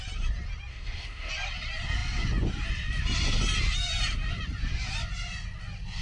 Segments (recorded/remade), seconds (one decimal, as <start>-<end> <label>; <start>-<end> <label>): 0.0-0.7 recorded; 0.7-1.3 remade; 1.3-6.0 recorded